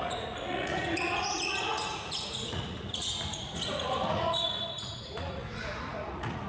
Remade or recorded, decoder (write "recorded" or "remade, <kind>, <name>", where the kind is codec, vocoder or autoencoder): remade, vocoder, Vocos